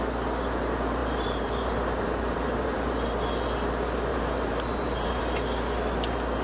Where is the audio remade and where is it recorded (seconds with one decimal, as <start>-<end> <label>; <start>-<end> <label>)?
0.0-1.0 recorded; 1.0-3.1 remade; 3.1-4.1 recorded; 4.1-5.2 remade; 5.2-6.4 recorded